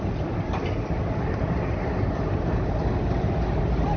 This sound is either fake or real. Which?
real